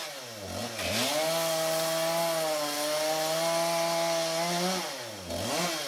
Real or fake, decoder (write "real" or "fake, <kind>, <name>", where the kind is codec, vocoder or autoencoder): real